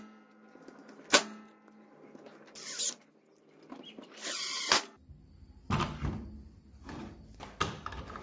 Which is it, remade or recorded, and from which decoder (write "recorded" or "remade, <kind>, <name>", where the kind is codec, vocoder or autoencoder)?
recorded